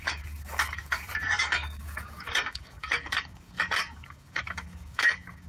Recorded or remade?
remade